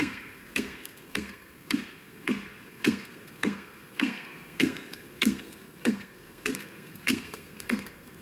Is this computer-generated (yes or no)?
yes